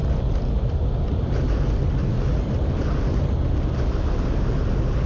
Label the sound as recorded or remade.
recorded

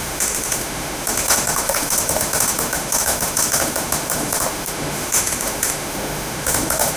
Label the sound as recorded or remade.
remade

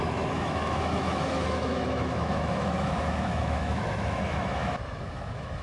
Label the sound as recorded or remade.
remade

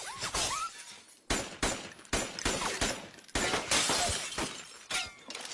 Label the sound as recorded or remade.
recorded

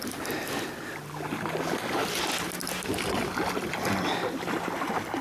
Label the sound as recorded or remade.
recorded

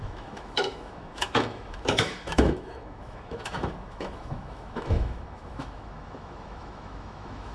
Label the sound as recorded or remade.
remade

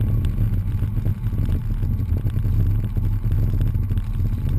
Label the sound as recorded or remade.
recorded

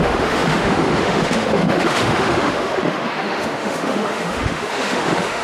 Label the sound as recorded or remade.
remade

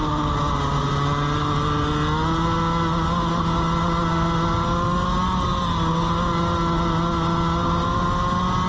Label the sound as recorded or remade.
recorded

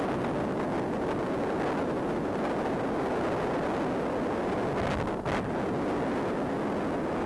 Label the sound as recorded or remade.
recorded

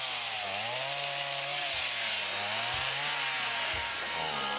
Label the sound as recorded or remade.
recorded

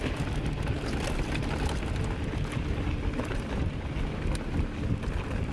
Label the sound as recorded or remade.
recorded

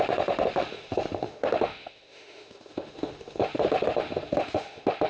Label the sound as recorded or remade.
remade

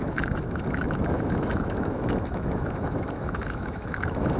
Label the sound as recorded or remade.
remade